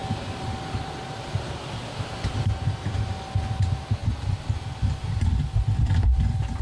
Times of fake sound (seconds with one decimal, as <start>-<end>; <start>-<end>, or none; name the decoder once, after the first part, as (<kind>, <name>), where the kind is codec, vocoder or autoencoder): 0.0-2.5 (vocoder, BigVGAN v2)